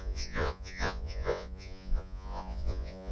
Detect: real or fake fake